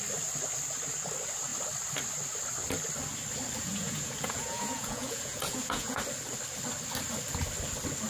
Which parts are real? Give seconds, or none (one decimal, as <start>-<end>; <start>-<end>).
0.0-3.7; 6.0-8.1